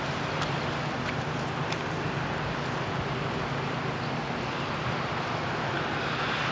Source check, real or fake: real